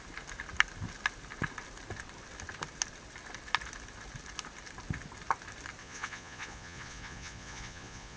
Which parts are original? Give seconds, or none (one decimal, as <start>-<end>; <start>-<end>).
0.0-5.8